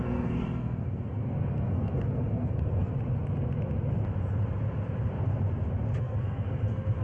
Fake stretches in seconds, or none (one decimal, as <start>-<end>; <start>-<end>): 0.0-2.9; 6.0-7.0